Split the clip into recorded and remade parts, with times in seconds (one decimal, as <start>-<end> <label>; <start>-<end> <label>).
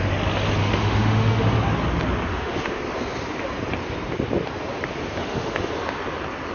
0.0-0.6 recorded; 0.6-1.4 remade; 1.4-2.3 recorded; 2.3-2.8 remade; 2.8-5.2 recorded; 5.2-5.7 remade; 5.7-6.5 recorded